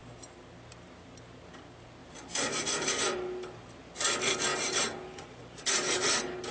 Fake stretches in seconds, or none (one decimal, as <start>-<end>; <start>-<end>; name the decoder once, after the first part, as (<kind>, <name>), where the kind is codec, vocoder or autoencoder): 2.0-2.9 (vocoder, BigVGAN v2); 4.5-5.4